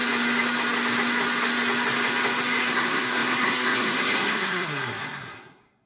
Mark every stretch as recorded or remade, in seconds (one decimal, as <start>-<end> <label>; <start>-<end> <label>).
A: 0.0-2.6 recorded; 2.6-5.9 remade